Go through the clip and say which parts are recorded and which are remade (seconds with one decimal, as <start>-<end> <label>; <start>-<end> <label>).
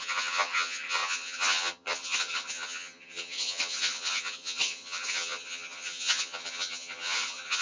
0.0-7.6 remade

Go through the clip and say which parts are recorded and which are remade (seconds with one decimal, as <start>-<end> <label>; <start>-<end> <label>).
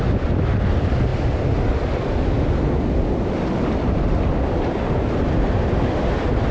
0.0-6.5 recorded